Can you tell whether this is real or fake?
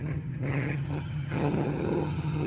fake